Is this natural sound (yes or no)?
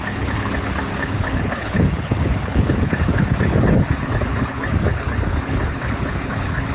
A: no